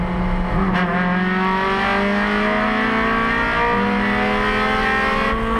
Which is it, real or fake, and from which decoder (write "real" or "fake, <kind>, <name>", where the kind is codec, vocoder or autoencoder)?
real